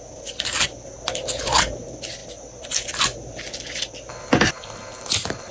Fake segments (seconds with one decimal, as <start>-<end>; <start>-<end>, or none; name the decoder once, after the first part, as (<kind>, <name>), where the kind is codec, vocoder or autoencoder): none